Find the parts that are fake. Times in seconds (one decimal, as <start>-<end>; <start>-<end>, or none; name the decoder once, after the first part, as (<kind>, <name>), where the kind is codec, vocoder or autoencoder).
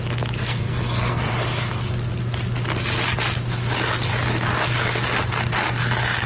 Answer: 0.4-1.3 (codec, SNAC)